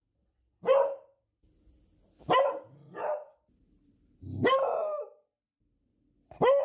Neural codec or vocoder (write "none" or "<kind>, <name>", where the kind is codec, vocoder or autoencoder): none